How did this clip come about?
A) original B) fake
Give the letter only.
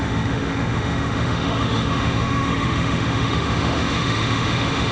B